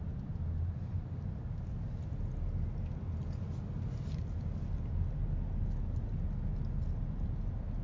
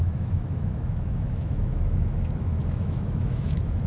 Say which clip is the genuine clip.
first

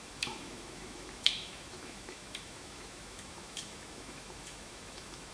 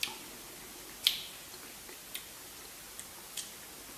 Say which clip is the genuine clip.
second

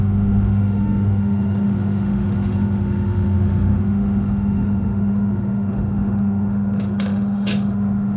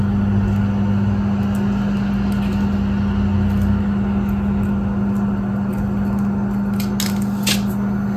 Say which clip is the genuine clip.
second